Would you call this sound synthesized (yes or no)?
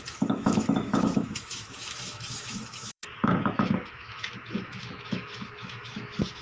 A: yes